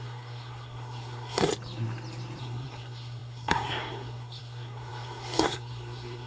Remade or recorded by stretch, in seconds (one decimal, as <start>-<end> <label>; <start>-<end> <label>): 0.0-1.5 remade; 1.5-2.4 recorded; 2.4-6.3 remade